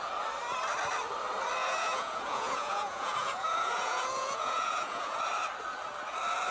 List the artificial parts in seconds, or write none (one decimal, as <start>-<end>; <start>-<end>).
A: 1.6-5.2